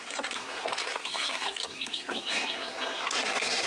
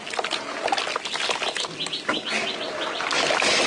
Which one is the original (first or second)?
second